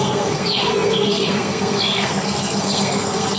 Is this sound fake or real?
fake